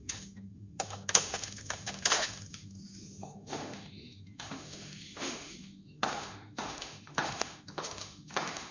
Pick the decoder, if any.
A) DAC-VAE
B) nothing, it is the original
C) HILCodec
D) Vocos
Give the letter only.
A